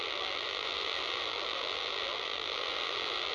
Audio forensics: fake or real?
fake